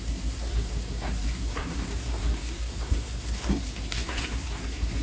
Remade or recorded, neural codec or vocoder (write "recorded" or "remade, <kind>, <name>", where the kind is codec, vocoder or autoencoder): remade, codec, SNAC